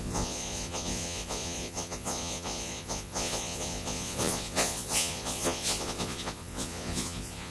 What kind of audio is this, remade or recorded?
remade